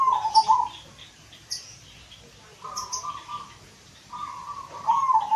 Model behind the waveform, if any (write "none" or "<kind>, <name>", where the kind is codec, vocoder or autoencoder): vocoder, BigVGAN v2